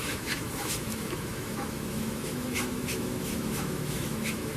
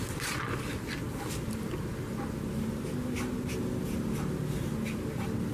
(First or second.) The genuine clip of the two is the second